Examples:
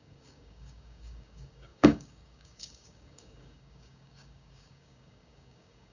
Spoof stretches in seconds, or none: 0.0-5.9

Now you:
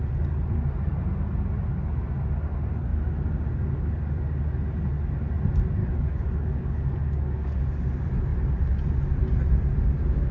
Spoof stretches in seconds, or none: 5.8-7.6